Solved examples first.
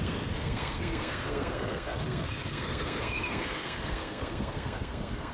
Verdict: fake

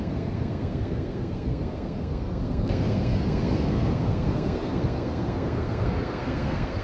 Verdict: fake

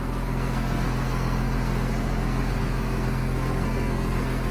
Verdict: fake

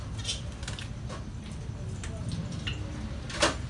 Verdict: real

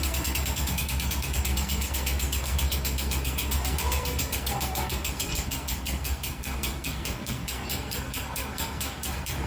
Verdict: fake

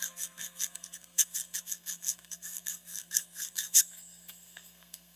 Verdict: fake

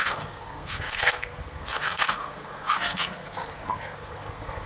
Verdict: fake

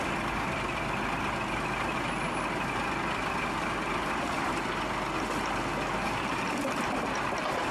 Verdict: real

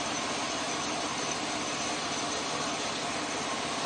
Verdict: real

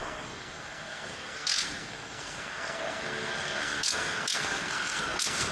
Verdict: fake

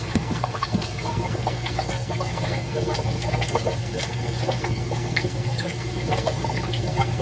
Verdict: fake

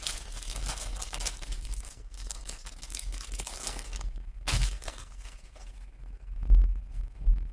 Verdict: fake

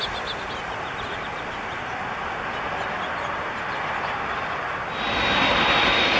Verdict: real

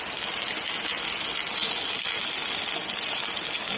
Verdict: real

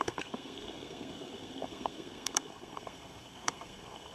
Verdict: fake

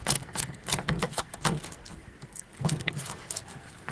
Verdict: fake